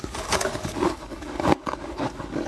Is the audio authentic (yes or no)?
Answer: no